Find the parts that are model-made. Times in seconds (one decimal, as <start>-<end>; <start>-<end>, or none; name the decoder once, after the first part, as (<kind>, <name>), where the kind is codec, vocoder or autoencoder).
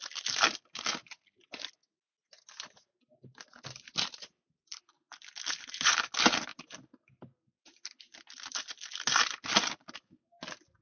none